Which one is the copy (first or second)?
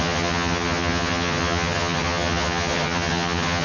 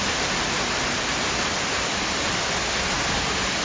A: first